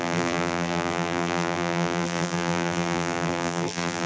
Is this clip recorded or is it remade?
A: remade